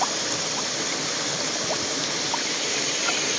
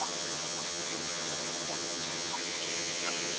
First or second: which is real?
first